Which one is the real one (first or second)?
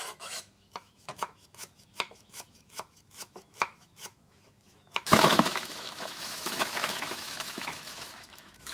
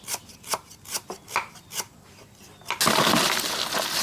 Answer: second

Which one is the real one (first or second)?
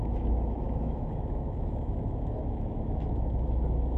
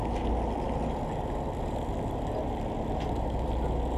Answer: second